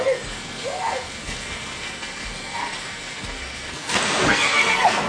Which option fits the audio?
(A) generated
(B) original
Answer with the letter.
A